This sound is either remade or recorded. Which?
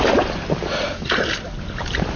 recorded